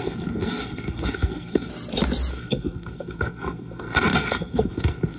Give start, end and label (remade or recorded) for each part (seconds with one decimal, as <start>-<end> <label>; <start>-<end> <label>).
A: 0.0-1.7 remade; 1.7-2.3 recorded; 2.3-5.2 remade